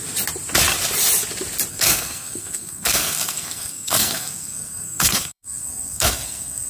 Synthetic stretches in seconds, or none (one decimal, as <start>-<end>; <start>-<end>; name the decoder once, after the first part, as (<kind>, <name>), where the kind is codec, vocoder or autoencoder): 1.7-6.7 (codec, SNAC)